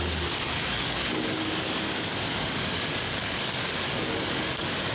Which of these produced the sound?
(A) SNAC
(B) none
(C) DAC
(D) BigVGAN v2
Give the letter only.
C